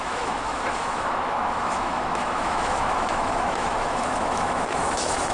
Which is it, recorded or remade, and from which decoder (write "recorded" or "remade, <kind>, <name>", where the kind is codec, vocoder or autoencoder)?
remade, autoencoder, DAC-VAE